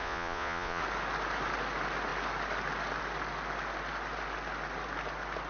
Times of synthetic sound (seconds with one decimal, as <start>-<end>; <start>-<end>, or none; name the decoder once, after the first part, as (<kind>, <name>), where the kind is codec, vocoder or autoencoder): 0.0-0.8 (vocoder, Vocos)